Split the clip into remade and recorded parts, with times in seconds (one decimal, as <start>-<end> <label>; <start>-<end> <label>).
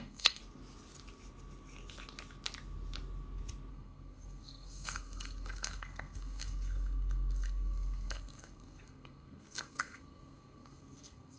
0.0-0.4 remade; 0.4-3.7 recorded; 3.7-11.4 remade